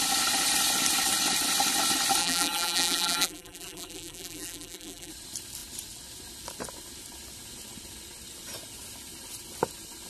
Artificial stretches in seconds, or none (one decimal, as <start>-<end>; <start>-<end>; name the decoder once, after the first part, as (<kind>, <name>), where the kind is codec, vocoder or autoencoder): 2.2-5.1 (vocoder, BigVGAN v2)